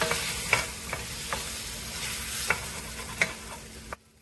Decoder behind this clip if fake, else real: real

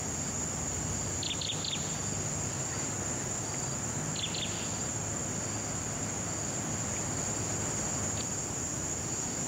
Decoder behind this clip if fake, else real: real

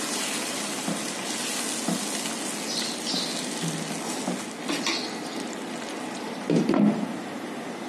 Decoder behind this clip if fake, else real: real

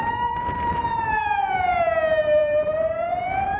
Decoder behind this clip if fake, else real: fake, vocoder, BigVGAN v2